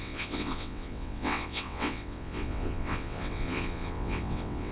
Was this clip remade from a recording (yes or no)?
yes